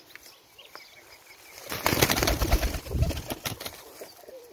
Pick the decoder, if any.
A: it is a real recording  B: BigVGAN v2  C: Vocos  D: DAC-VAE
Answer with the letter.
B